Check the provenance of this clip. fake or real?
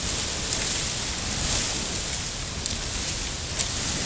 real